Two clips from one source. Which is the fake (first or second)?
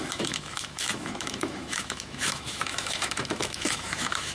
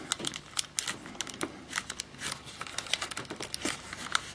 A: first